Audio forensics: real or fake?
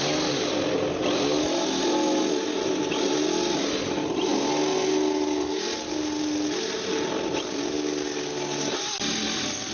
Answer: real